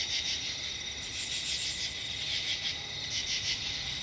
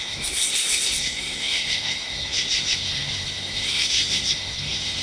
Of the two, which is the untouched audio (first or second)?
first